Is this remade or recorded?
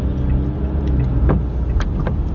recorded